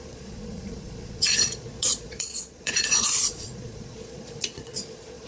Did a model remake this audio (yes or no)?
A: yes